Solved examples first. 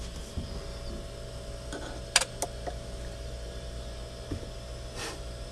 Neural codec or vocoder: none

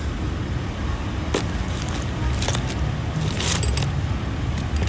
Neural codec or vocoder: none